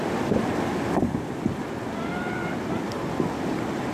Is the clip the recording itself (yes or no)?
yes